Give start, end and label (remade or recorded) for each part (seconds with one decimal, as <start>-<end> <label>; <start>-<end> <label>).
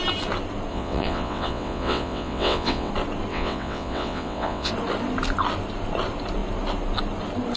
0.0-0.7 recorded; 0.7-2.9 remade; 2.9-3.3 recorded; 3.3-4.7 remade; 4.7-7.6 recorded